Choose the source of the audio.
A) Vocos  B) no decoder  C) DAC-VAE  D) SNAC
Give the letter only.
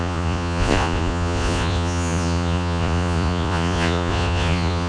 A